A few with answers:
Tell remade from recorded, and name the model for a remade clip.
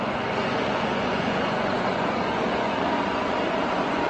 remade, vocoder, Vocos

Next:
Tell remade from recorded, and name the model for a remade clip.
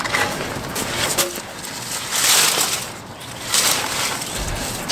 recorded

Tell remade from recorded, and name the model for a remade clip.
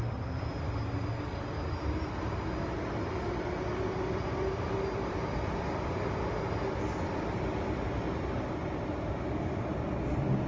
recorded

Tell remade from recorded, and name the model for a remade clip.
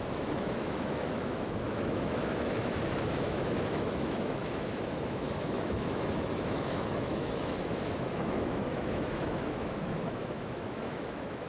remade, autoencoder, DAC-VAE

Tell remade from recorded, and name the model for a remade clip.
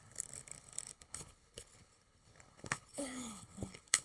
remade, codec, HILCodec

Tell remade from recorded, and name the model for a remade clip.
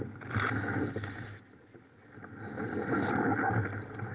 recorded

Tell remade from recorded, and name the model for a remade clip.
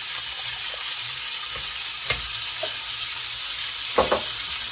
recorded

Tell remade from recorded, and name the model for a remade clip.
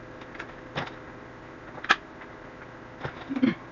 recorded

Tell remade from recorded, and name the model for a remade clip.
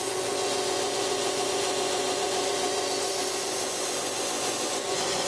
remade, vocoder, Vocos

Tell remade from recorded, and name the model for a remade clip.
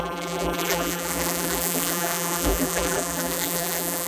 remade, vocoder, BigVGAN v2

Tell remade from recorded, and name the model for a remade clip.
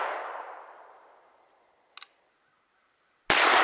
recorded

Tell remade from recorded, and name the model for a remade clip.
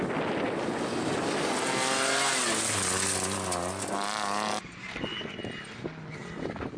recorded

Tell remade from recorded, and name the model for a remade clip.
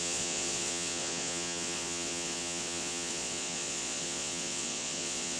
remade, vocoder, Vocos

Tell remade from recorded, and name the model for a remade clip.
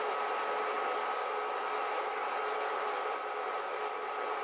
recorded